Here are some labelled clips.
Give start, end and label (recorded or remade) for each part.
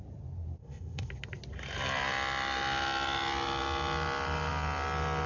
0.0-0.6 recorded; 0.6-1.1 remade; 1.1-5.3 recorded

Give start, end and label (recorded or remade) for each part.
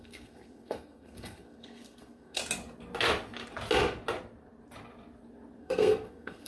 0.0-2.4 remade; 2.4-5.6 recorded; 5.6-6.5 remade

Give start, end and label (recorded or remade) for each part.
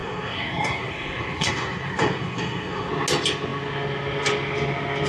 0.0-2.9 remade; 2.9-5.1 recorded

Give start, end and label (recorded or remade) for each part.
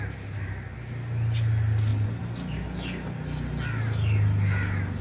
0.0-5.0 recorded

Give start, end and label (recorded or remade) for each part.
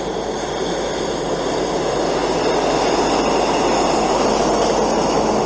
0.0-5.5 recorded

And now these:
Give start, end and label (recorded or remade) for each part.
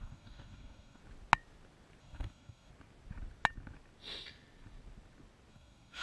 0.0-1.0 remade; 1.0-2.0 recorded; 2.0-2.7 remade; 2.7-5.5 recorded; 5.5-6.0 remade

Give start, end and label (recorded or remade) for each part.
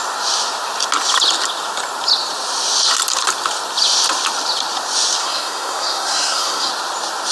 0.0-5.2 recorded; 5.2-6.7 remade; 6.7-7.3 recorded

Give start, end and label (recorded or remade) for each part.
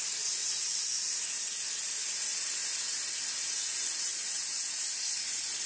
0.0-0.4 recorded; 0.4-1.2 remade; 1.2-2.6 recorded; 2.6-5.2 remade; 5.2-5.7 recorded